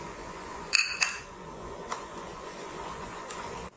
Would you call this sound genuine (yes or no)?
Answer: no